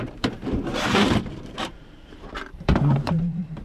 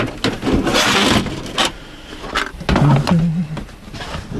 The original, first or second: second